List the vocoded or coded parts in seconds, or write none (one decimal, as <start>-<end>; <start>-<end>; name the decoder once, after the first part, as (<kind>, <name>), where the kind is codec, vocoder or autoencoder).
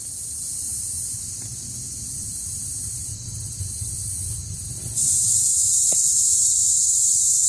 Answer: 0.0-3.1 (vocoder, BigVGAN v2); 5.3-7.5